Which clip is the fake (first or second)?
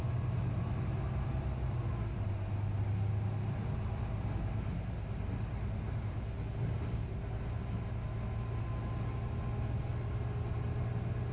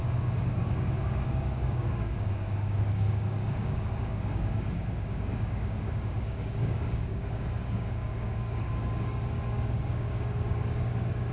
second